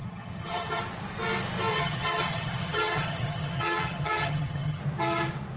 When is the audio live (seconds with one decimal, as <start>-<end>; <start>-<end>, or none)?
0.8-1.7; 4.8-5.6